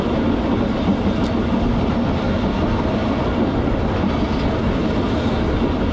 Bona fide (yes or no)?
yes